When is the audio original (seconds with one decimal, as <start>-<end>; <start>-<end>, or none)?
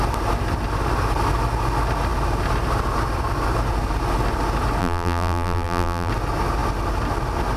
0.0-4.8; 6.1-7.6